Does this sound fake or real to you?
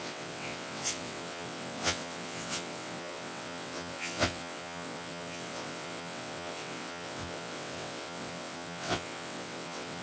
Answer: fake